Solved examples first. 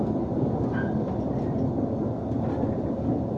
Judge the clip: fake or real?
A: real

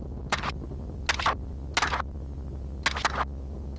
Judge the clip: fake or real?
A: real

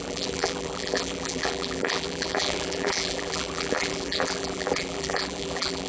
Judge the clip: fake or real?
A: fake